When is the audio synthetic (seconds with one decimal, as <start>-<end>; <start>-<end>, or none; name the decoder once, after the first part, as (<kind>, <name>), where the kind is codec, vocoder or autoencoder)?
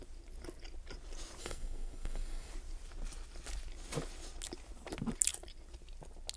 1.4-2.5 (codec, SNAC)